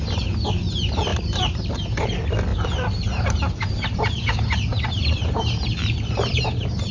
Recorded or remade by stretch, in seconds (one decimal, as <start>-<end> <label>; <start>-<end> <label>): 0.0-1.1 recorded; 1.1-2.1 remade; 2.1-2.5 recorded; 2.5-3.4 remade; 3.4-4.7 recorded; 4.7-6.4 remade; 6.4-6.9 recorded